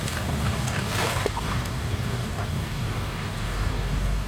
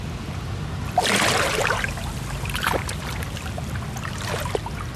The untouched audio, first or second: second